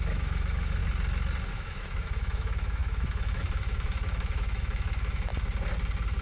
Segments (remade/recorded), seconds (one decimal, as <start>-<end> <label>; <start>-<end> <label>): 0.0-0.8 remade; 0.8-1.5 recorded; 1.5-5.3 remade; 5.3-6.2 recorded